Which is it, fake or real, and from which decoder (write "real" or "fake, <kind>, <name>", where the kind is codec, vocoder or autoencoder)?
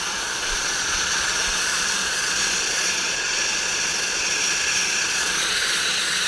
fake, vocoder, Vocos